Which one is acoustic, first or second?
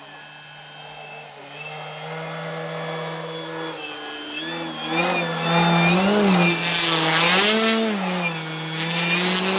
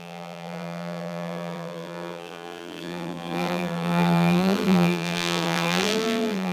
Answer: first